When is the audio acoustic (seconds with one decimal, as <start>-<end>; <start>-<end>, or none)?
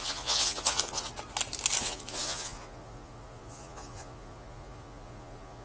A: 1.1-1.8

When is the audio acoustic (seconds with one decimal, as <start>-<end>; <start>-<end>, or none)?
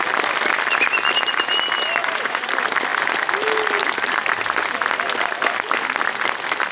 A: 0.0-2.0; 2.5-6.7